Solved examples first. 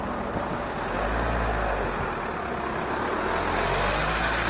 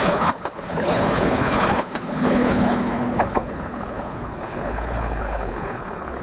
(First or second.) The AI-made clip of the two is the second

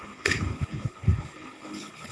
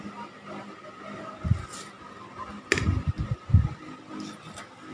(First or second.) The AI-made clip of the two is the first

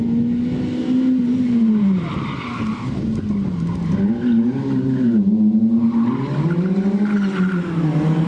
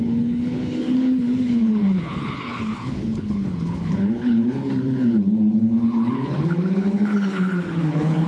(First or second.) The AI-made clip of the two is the second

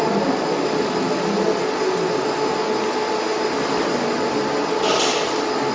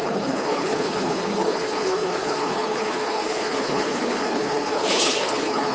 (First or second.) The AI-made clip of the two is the second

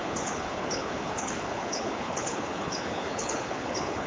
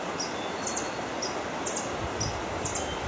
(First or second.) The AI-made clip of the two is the first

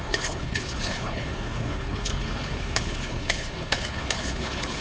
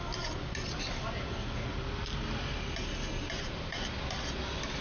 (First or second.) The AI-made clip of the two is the first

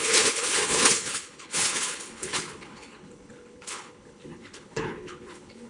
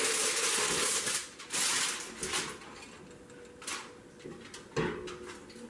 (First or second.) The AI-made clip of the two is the first